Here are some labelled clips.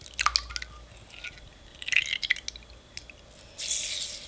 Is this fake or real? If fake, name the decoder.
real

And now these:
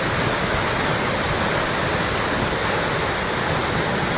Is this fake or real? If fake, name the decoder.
real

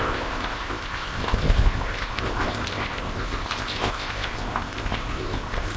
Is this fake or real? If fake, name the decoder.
fake, codec, ZipCodec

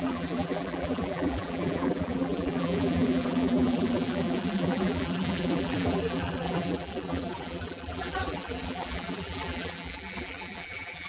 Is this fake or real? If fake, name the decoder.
fake, vocoder, BigVGAN v2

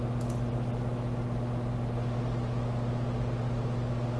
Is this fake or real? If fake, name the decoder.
real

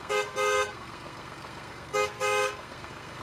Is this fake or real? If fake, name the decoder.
fake, codec, SNAC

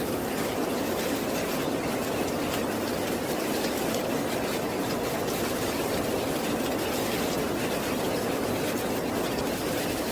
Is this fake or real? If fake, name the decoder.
real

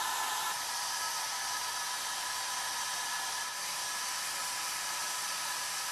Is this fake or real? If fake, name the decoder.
real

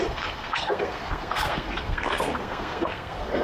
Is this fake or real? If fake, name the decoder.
fake, codec, SNAC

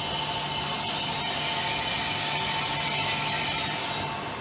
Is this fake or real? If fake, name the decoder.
real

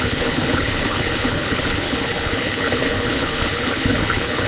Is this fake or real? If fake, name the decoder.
fake, codec, HILCodec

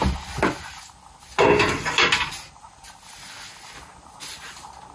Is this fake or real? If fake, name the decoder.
real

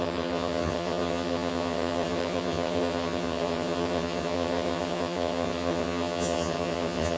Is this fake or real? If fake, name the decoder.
fake, vocoder, HiFi-GAN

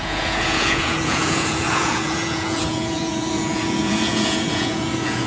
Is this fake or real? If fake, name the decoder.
fake, vocoder, Vocos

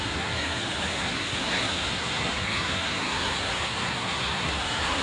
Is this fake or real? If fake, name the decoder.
fake, codec, SNAC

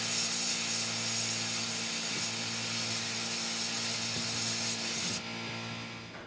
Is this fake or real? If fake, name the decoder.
real